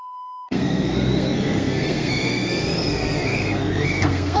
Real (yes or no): no